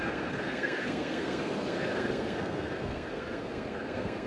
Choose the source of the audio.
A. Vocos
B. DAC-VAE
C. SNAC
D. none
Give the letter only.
C